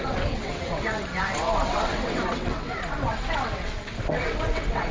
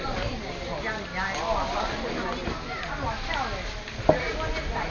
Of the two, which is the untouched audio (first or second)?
second